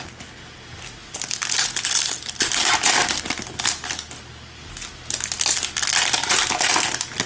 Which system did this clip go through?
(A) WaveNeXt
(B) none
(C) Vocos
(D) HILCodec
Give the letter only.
B